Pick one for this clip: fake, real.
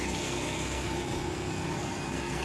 fake